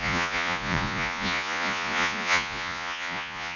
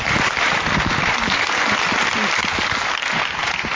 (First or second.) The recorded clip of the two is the second